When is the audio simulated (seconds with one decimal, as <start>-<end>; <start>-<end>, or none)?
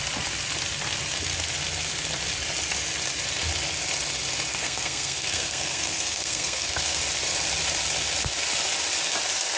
4.5-7.0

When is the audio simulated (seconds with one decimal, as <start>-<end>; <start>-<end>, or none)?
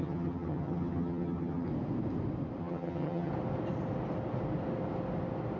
0.0-1.7; 2.6-3.3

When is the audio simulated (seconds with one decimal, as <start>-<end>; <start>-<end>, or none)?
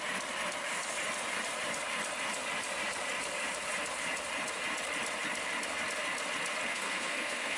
6.7-7.6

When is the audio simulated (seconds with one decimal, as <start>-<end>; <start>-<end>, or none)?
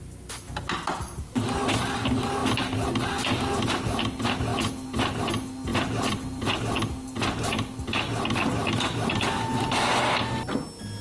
5.7-6.6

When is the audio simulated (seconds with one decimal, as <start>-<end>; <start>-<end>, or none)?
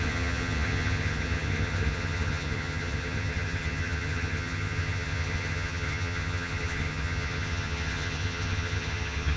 0.0-9.4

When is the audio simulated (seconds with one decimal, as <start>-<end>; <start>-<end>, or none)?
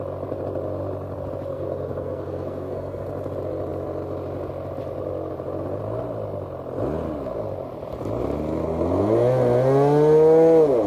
1.5-3.1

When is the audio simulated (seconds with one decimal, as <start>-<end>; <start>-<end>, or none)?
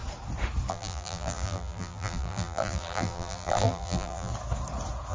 0.7-4.3